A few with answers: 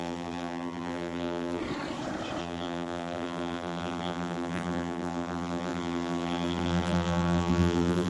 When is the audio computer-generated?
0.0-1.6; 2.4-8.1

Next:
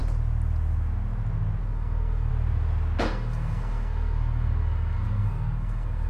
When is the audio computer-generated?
1.6-2.3; 3.0-6.1

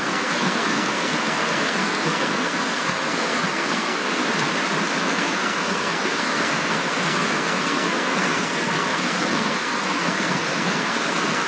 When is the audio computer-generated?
0.0-4.2; 5.0-11.5

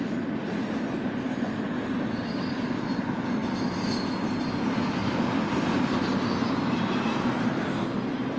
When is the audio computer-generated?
none

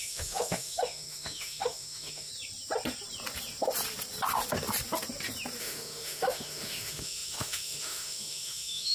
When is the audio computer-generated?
0.0-2.3; 5.6-8.9